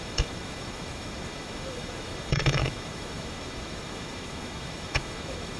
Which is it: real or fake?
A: fake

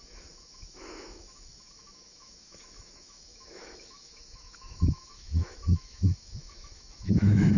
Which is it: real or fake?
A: fake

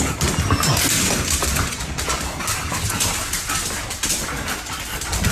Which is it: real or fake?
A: real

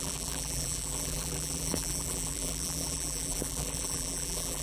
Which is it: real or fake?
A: fake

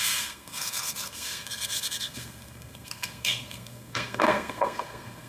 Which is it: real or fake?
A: fake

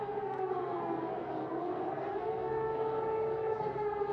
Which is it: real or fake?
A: fake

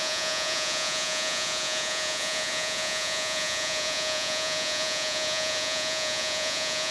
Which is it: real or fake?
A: fake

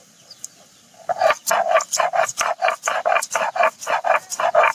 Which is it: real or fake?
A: real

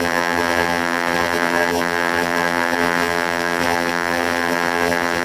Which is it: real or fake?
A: fake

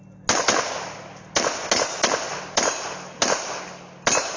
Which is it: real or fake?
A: real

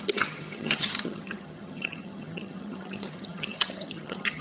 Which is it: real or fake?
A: fake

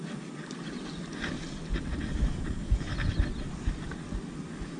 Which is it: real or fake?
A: real